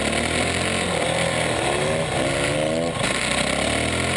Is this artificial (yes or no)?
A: no